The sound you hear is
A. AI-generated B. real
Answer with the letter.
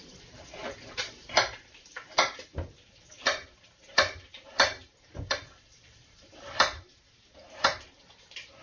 A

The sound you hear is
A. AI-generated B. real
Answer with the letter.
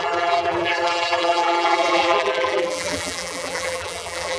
A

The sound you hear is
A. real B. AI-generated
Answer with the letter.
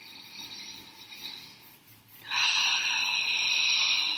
A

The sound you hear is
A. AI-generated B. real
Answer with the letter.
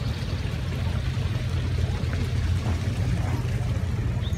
B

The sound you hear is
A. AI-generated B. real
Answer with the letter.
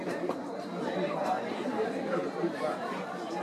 A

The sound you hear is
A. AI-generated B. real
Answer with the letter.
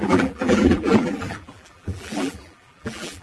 A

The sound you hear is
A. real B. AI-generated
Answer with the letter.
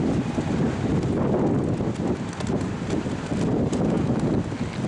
A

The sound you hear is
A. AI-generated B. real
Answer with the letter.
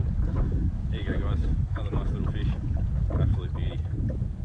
A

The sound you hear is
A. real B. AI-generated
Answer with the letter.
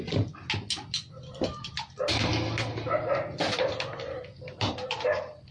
A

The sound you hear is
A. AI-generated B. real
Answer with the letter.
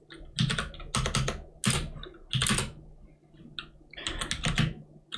B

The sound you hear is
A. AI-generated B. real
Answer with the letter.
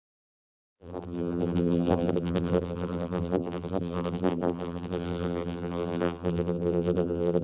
A